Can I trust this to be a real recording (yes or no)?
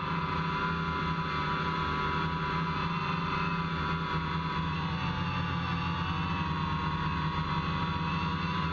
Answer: yes